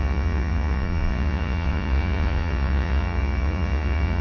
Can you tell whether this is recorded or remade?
remade